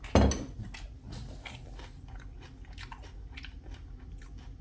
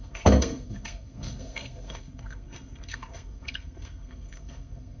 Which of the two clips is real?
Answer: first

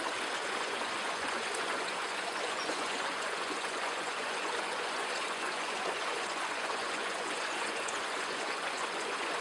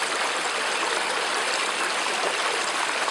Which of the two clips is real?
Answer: second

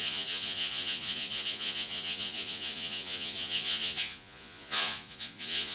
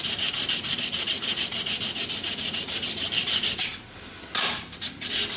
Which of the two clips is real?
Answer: second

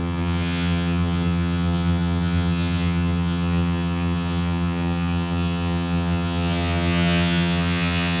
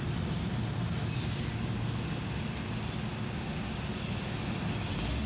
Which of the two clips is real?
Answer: second